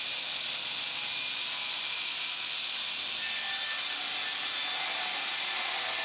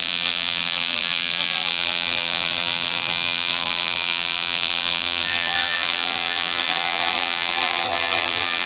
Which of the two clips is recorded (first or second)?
first